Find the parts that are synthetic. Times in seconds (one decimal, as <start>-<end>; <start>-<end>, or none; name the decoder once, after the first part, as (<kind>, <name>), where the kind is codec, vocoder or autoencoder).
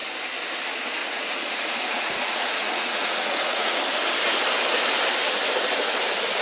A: 1.0-3.8 (vocoder, Vocos)